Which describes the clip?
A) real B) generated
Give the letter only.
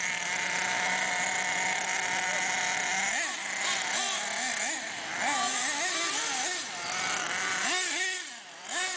A